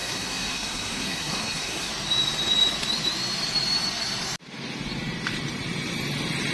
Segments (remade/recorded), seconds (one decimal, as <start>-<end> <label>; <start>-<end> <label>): 0.0-1.9 remade; 1.9-6.5 recorded